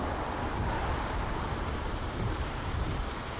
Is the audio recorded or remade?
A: remade